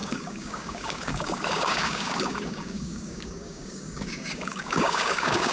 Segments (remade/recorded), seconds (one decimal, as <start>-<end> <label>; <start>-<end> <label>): 0.0-5.5 remade